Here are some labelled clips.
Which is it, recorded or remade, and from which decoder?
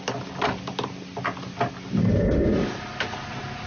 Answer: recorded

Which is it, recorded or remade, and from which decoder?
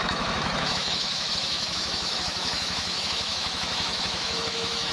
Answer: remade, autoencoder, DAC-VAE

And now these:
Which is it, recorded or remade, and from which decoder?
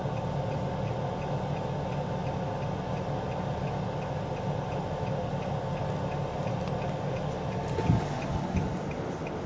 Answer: recorded